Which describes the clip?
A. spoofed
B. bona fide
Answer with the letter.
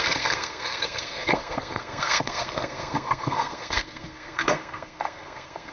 A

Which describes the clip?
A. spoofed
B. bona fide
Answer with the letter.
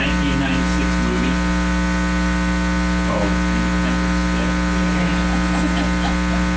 B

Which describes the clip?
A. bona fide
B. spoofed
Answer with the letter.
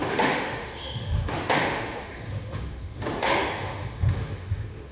B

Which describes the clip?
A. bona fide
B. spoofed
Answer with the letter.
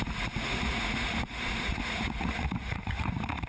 B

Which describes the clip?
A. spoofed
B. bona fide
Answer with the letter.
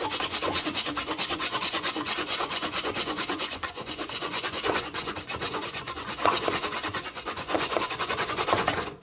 A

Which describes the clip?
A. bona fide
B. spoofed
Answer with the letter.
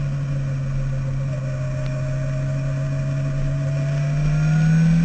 A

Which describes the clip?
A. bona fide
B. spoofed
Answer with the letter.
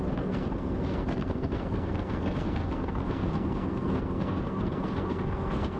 B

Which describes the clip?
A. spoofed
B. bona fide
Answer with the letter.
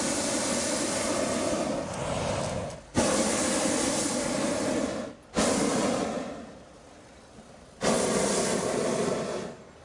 B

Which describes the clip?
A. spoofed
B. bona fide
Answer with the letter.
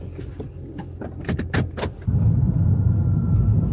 B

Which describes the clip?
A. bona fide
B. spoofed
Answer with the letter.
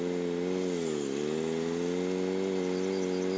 A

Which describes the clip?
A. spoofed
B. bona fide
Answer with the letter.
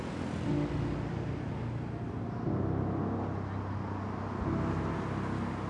B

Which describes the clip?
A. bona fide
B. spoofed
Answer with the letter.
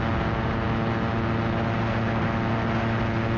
A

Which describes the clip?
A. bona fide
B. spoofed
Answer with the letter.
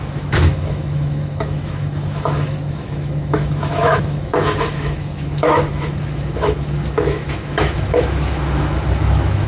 B